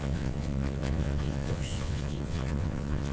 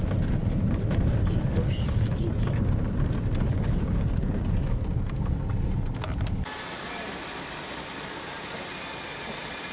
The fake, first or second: first